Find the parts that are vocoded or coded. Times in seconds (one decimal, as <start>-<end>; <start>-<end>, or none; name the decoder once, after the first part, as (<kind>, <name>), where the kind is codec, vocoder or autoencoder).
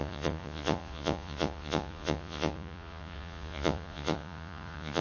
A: 0.0-5.0 (vocoder, Vocos)